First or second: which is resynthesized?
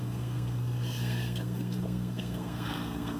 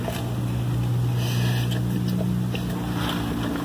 first